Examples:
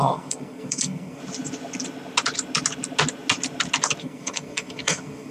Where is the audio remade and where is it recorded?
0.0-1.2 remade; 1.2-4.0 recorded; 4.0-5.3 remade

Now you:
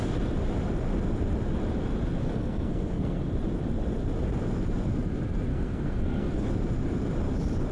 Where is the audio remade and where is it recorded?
0.0-2.2 recorded; 2.2-3.2 remade; 3.2-5.5 recorded; 5.5-6.5 remade; 6.5-7.7 recorded

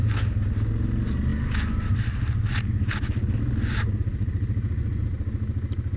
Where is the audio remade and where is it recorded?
0.0-6.0 recorded

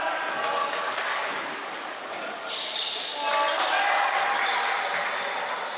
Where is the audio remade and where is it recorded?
0.0-0.6 recorded; 0.6-2.5 remade; 2.5-5.8 recorded